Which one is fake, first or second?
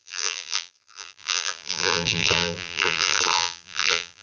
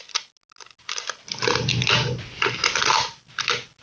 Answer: first